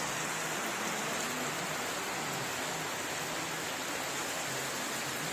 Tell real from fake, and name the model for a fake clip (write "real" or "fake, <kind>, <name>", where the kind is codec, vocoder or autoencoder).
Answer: real